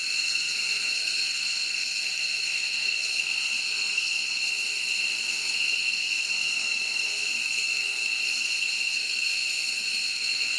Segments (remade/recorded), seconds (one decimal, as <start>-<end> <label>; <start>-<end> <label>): 0.0-10.6 remade